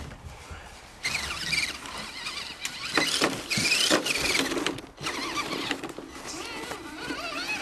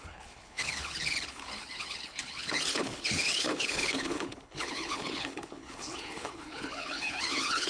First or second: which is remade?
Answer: second